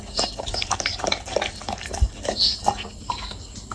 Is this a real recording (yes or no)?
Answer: yes